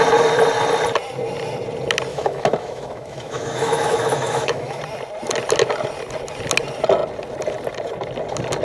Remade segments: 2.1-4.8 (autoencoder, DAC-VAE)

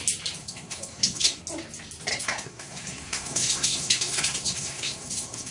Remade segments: 0.4-1.4 (codec, SNAC); 2.1-5.5

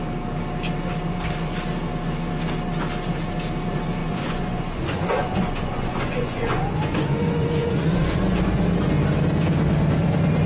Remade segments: 4.0-8.6 (vocoder, Vocos)

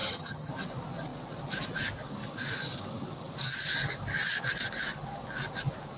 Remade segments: 0.0-0.5 (vocoder, HiFi-GAN)